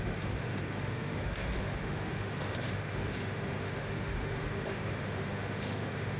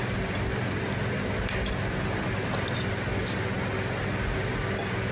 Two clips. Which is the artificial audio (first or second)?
first